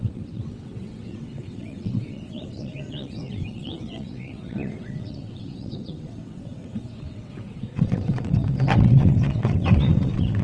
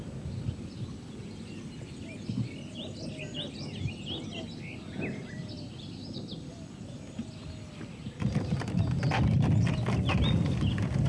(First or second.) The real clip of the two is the second